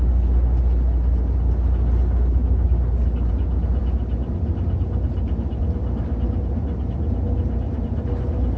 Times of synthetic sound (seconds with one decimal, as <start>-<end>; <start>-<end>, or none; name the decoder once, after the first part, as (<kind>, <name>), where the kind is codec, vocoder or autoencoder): none